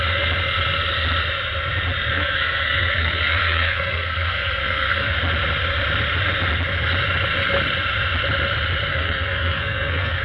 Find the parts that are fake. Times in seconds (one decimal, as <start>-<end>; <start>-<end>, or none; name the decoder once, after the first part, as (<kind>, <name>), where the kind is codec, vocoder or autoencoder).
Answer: 2.1-5.2 (codec, SNAC); 8.9-10.2